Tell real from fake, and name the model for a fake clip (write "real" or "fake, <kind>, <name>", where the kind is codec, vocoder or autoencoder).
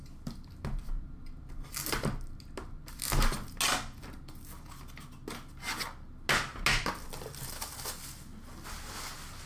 real